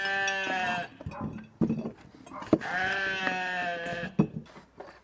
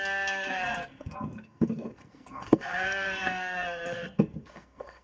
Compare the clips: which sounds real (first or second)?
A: first